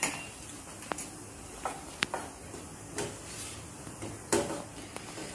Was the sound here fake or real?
real